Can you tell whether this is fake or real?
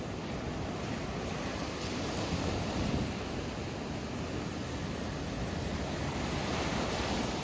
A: real